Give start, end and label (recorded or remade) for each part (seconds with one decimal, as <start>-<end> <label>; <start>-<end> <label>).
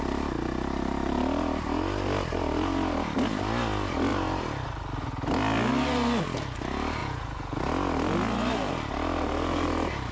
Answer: 0.0-7.0 recorded; 7.0-7.6 remade; 7.6-10.1 recorded